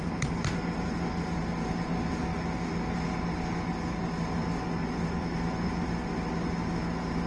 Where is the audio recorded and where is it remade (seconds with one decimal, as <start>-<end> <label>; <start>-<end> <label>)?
0.0-7.3 recorded